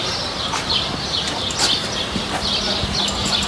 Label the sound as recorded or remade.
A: recorded